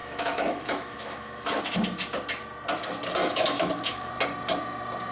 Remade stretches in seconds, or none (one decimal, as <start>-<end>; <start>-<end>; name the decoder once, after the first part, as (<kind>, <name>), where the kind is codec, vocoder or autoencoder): 0.0-1.6 (autoencoder, DAC-VAE); 3.2-4.1